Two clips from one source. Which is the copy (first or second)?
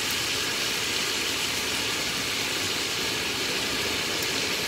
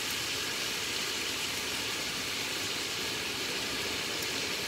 second